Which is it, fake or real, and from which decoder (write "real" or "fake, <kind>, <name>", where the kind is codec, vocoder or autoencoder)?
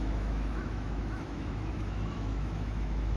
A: fake, autoencoder, DAC-VAE